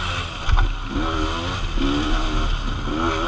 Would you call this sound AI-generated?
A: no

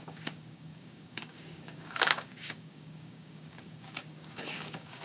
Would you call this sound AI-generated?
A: yes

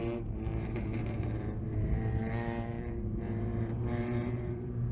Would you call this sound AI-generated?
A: yes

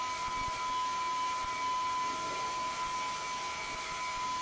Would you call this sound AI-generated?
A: no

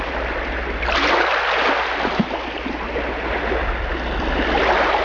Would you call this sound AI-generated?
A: no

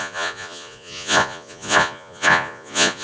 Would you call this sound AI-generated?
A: yes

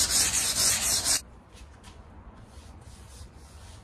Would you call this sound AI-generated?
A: yes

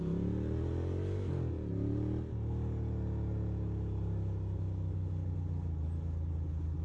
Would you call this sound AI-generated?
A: no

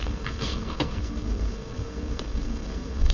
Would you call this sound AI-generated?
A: yes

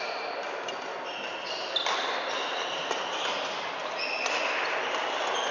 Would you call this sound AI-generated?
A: no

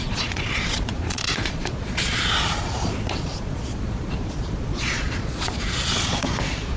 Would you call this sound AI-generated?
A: yes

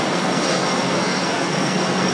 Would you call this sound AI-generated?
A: yes